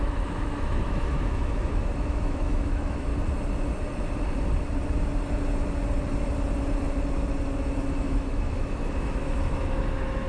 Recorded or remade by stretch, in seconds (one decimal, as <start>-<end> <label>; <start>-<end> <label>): 0.0-3.1 remade; 3.1-8.0 recorded; 8.0-10.3 remade